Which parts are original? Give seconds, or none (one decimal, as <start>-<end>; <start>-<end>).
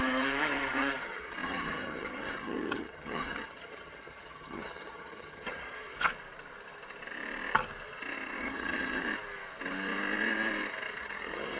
6.1-8.4; 9.1-11.0